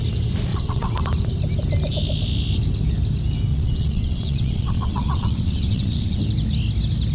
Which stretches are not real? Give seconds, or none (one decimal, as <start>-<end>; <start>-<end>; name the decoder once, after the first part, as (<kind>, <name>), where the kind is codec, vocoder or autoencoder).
0.5-1.0 (vocoder, WaveNeXt); 3.5-6.2